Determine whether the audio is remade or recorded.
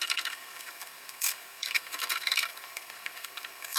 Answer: remade